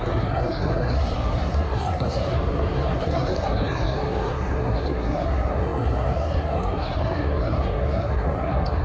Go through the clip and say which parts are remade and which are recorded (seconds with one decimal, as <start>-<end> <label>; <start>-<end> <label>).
0.0-8.8 remade